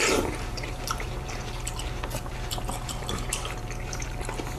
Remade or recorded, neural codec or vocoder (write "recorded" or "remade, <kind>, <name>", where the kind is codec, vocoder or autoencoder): remade, vocoder, BigVGAN v2